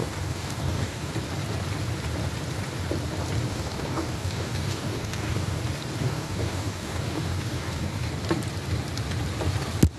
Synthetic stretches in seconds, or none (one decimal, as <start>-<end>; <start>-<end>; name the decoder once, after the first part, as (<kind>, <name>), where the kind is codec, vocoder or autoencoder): 0.0-1.1 (codec, DAC); 3.5-5.6; 6.0-8.1